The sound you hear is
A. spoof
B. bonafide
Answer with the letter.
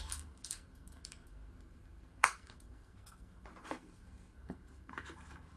A